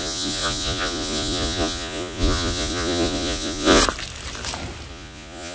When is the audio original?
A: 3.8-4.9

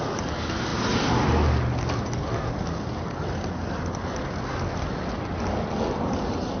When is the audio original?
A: 0.0-6.6

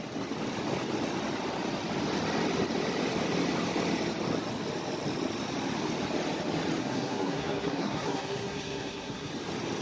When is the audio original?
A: 0.0-6.8; 9.3-9.8

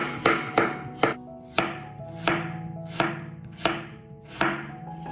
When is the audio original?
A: 0.0-5.1

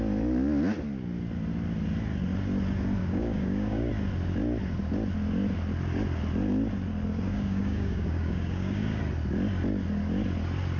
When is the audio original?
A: 0.0-3.0; 3.9-7.3; 9.0-10.8

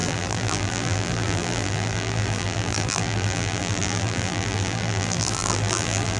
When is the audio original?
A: none